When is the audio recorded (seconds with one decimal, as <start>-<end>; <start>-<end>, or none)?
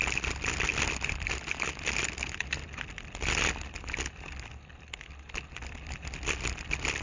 0.0-7.0